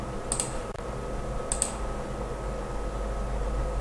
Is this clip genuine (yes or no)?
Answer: yes